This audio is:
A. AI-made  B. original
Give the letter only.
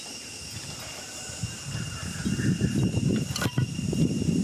B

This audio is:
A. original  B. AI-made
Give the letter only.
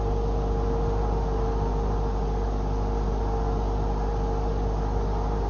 A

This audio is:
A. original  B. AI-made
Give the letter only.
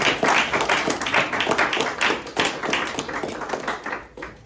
A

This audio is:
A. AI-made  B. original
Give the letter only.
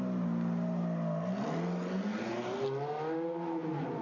B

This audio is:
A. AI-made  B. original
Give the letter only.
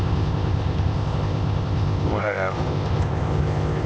A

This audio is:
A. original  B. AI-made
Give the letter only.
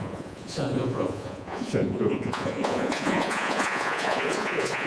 B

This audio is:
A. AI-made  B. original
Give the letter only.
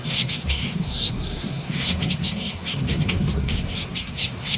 A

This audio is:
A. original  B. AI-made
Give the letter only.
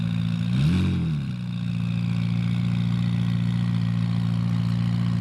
A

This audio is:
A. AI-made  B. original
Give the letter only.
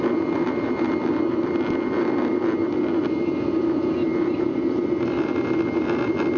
B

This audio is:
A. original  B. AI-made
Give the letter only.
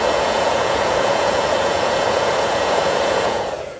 B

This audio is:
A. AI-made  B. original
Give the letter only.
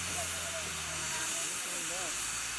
B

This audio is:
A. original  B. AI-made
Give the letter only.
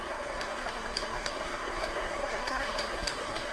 B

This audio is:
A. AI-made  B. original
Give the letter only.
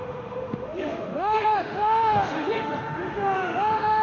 A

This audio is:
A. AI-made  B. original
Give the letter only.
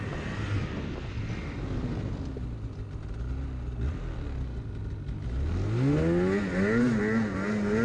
B